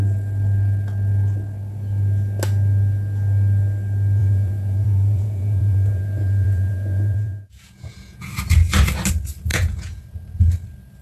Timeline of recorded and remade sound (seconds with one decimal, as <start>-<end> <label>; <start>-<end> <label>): 0.0-4.2 recorded; 4.2-8.3 remade; 8.3-9.5 recorded; 9.5-10.0 remade; 10.0-11.0 recorded